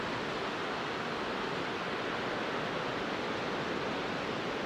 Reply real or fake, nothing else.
real